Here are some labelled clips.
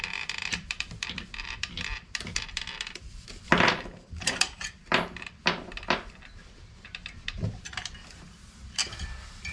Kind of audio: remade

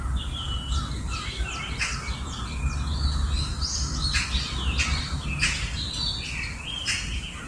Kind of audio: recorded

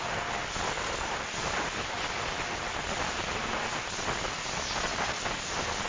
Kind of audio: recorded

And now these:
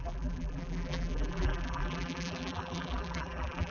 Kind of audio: remade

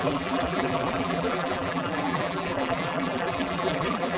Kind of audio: remade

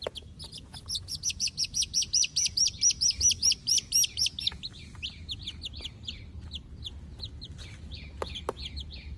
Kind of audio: recorded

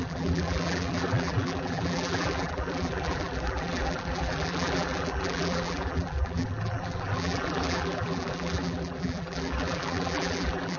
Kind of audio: remade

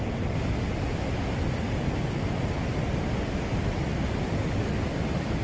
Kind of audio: recorded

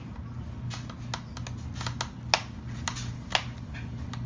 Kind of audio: recorded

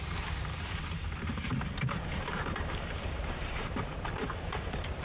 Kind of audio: remade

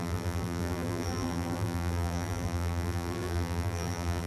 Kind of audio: remade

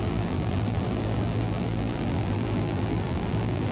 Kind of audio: remade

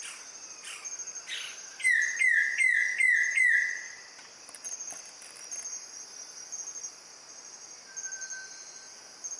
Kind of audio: recorded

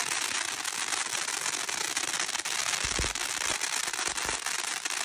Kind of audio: recorded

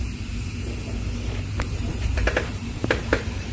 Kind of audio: remade